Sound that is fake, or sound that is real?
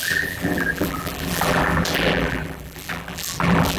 fake